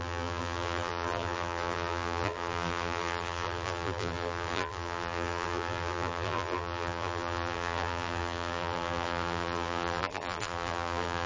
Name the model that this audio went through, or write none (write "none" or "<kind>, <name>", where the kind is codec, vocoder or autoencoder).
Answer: vocoder, BigVGAN v2